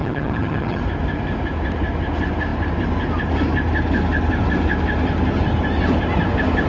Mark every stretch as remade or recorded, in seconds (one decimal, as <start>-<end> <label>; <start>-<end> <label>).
0.0-0.8 remade; 0.8-6.7 recorded